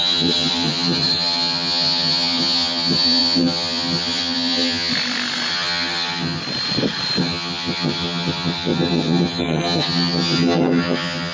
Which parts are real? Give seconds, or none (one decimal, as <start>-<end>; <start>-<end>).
4.9-5.5; 6.4-7.2